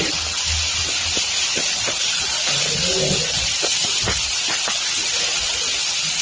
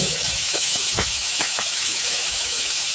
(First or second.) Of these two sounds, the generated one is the second